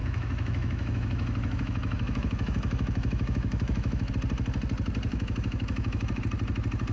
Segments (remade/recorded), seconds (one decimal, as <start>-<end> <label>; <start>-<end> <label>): 0.0-4.1 remade; 4.1-5.1 recorded; 5.1-6.2 remade; 6.2-6.9 recorded